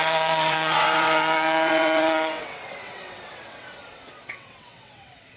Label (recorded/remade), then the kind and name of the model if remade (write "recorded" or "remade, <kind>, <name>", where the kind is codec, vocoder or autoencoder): remade, vocoder, WaveNeXt